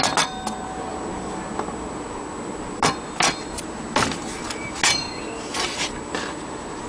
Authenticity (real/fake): real